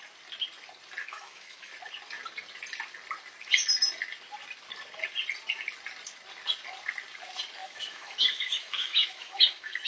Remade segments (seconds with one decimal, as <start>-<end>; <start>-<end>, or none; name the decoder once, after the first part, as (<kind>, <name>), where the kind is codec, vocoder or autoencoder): 1.0-1.7 (autoencoder, DAC-VAE); 7.6-9.9